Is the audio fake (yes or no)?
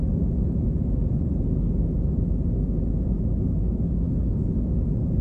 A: no